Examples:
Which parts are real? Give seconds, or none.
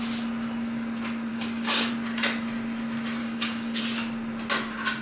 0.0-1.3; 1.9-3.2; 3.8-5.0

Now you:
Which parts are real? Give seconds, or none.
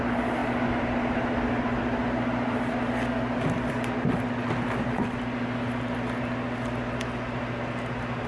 0.0-8.3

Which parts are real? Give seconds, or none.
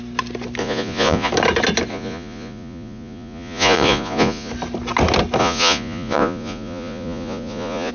0.0-0.6; 1.3-1.9; 4.5-5.4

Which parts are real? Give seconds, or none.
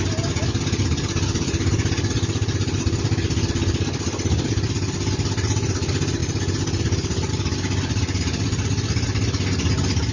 0.0-10.1